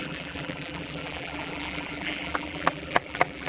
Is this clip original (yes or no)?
no